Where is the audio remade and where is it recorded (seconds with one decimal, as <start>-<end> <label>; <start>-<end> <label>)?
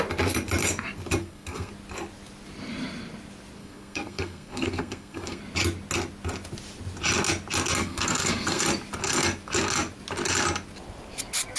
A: 0.0-1.2 recorded; 1.2-1.7 remade; 1.7-3.6 recorded; 3.6-5.4 remade; 5.4-7.8 recorded; 7.8-8.6 remade; 8.6-11.6 recorded